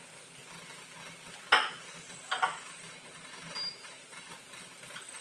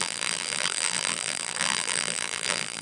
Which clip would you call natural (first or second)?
first